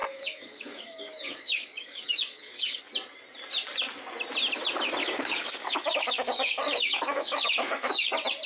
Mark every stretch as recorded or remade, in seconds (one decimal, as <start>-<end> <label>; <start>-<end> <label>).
0.0-2.8 remade; 2.8-5.0 recorded; 5.0-8.1 remade; 8.1-8.5 recorded